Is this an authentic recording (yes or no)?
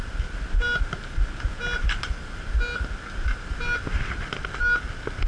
yes